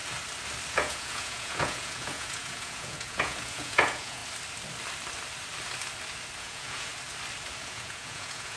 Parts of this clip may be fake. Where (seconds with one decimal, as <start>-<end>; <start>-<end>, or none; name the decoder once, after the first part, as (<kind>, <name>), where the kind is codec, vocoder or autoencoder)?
0.7-4.2 (vocoder, Vocos); 6.4-6.9; 7.6-8.6